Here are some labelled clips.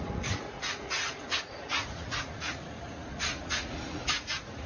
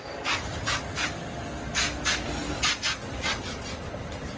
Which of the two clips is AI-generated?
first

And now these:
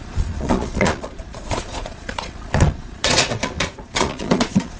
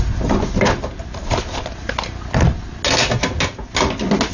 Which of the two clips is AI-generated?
first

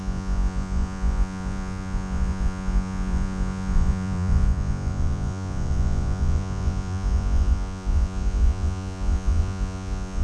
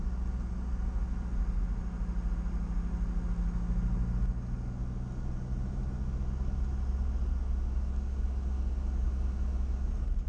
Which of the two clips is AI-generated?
first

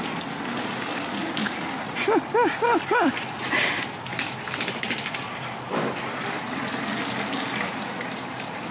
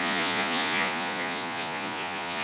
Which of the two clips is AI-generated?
second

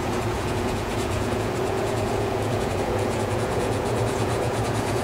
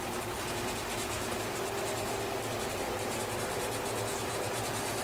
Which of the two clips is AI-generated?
first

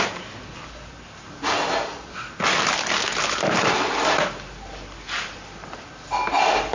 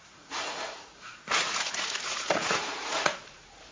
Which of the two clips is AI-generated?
second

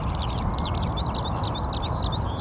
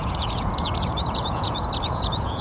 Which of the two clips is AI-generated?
second